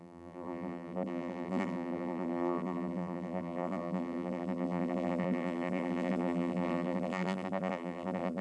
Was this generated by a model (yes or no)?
yes